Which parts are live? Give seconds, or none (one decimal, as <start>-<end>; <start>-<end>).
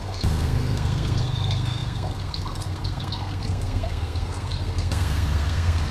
none